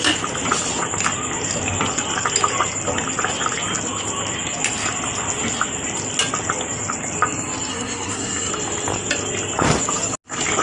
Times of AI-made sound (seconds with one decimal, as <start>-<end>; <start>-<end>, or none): 7.7-8.5